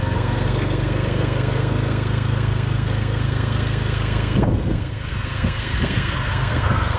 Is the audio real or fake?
fake